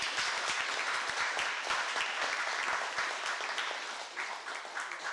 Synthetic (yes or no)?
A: no